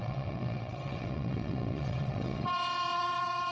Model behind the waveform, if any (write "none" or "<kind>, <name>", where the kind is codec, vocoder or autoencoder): vocoder, WaveNeXt